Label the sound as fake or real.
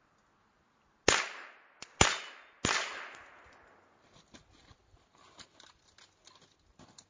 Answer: real